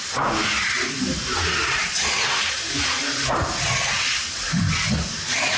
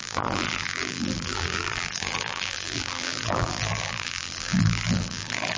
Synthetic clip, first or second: second